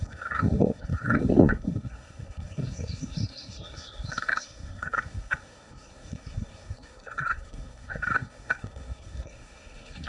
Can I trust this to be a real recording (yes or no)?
no